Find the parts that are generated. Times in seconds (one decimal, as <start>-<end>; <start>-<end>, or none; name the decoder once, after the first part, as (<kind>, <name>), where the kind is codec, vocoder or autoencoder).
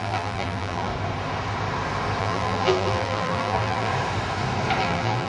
0.0-0.9 (vocoder, BigVGAN v2); 2.2-3.9; 4.8-5.3